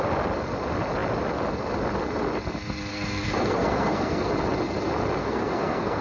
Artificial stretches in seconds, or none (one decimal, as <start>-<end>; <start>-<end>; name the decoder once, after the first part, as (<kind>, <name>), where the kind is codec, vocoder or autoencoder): 2.9-4.3 (codec, SNAC); 5.2-6.0